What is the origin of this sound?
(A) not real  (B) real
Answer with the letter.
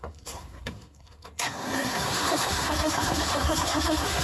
A